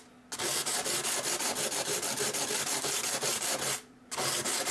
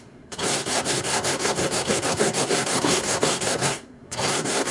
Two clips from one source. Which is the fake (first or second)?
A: second